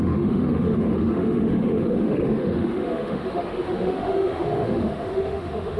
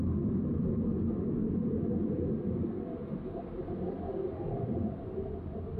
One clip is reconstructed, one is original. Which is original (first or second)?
second